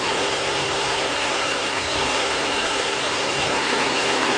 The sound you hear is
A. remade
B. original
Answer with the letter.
A